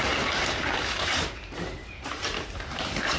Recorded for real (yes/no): no